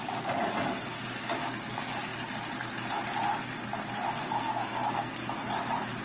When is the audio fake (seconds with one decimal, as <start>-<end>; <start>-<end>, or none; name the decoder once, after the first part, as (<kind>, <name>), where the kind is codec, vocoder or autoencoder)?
4.2-5.1 (codec, SNAC)